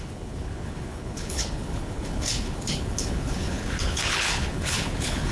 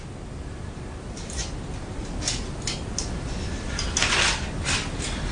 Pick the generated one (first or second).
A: first